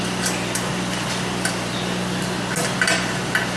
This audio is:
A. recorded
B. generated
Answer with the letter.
A